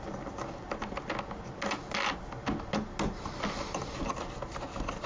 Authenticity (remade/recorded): recorded